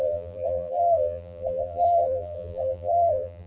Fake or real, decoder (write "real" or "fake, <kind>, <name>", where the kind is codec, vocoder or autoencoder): fake, vocoder, BigVGAN v2